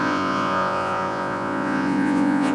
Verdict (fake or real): fake